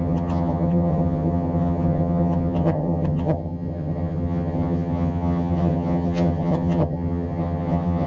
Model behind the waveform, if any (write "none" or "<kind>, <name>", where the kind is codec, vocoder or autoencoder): vocoder, HiFi-GAN